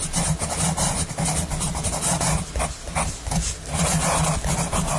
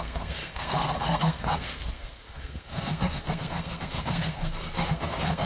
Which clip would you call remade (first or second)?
second